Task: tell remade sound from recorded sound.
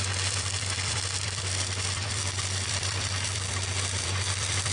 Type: remade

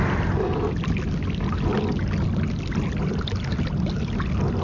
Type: recorded